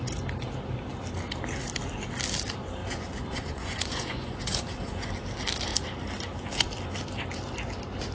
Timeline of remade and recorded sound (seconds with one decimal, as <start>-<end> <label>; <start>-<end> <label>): 0.0-2.8 recorded; 2.8-5.1 remade; 5.1-8.1 recorded

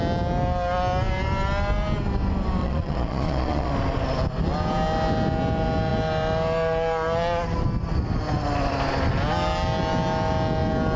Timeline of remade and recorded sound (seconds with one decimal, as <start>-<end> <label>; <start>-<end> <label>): 0.0-2.6 recorded; 2.6-3.7 remade; 3.7-11.0 recorded

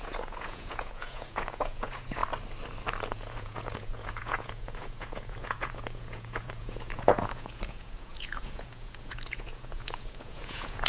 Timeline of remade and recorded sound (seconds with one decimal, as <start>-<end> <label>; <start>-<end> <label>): 0.0-2.2 remade; 2.2-3.1 recorded; 3.1-10.9 remade

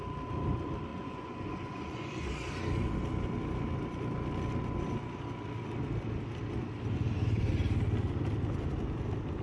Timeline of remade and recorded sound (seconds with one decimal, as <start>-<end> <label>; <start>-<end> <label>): 0.0-0.9 recorded; 0.9-2.3 remade; 2.3-9.4 recorded

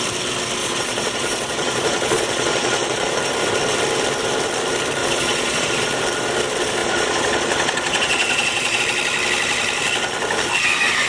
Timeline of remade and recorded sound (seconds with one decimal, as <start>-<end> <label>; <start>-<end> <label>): 0.0-0.6 recorded; 0.6-3.2 remade; 3.2-5.0 recorded; 5.0-5.9 remade; 5.9-6.8 recorded; 6.8-8.8 remade; 8.8-11.1 recorded

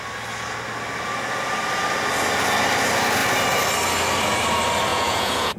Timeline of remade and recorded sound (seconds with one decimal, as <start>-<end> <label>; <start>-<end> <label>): 0.0-4.9 recorded; 4.9-5.6 remade

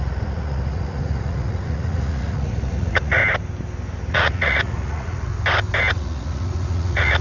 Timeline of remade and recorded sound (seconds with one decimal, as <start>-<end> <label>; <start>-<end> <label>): 0.0-3.2 remade; 3.2-4.1 recorded; 4.1-5.3 remade; 5.3-5.9 recorded; 5.9-7.2 remade

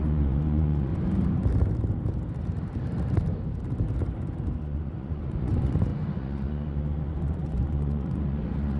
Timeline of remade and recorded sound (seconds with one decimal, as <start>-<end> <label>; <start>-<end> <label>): 0.0-0.9 remade; 0.9-4.6 recorded; 4.6-8.8 remade